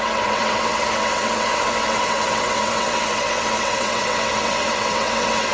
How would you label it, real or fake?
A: fake